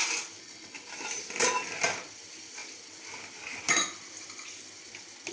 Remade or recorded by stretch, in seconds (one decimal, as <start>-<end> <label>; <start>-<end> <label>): 0.0-0.4 recorded; 0.4-0.9 remade; 0.9-5.3 recorded